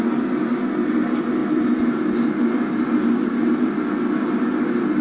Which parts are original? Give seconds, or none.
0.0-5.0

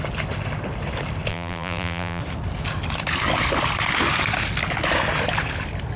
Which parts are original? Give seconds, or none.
0.0-1.3; 2.2-6.0

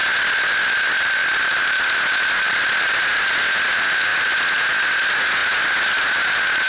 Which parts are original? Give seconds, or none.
0.0-0.6; 4.1-4.8

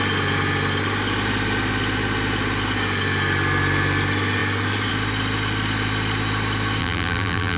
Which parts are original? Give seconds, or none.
0.0-6.8

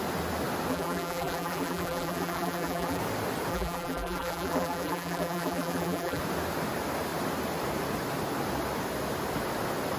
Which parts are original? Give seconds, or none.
0.0-0.7; 3.0-3.5; 6.2-10.0